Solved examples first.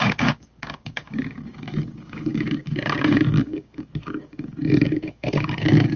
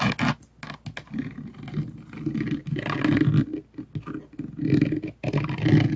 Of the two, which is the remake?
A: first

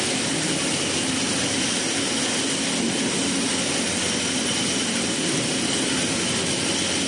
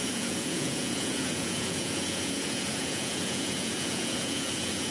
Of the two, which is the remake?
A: second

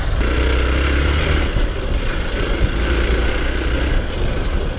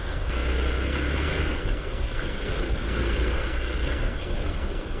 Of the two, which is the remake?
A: second